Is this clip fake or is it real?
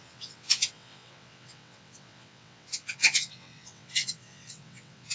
fake